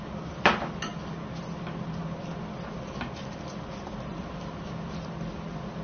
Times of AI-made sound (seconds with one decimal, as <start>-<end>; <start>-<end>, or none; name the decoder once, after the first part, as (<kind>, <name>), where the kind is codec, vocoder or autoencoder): none